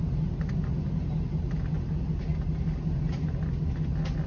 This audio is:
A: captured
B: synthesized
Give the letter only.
A